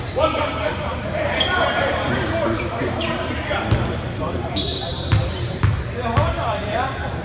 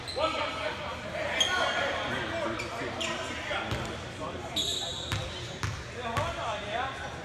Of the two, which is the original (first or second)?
second